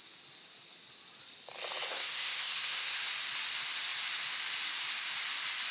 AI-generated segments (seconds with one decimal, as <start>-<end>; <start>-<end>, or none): 1.9-3.0